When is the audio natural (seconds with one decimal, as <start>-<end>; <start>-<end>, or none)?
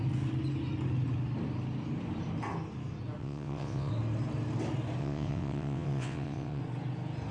0.0-3.2; 3.9-5.0; 6.6-7.3